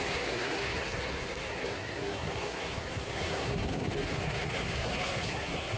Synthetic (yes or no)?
yes